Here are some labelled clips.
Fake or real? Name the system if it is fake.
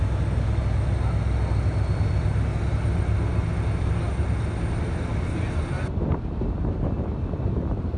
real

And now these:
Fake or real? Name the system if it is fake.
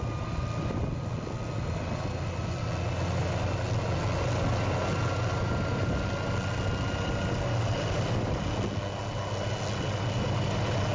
real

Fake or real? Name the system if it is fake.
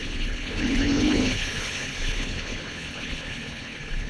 fake, codec, HILCodec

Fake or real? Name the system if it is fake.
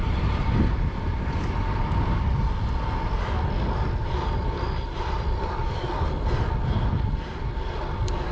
real